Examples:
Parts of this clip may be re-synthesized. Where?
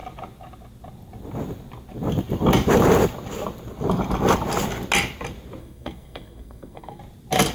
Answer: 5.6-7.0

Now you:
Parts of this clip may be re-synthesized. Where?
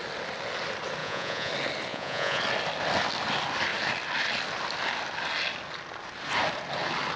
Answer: 1.0-1.5; 1.9-2.4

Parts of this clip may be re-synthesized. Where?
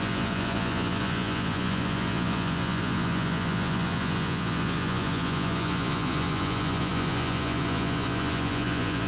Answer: 0.0-9.1